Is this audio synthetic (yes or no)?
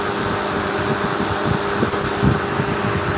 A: no